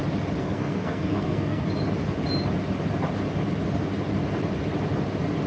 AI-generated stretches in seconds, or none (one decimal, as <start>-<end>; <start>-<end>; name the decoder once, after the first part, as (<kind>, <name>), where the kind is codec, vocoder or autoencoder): 0.4-1.7 (codec, SNAC)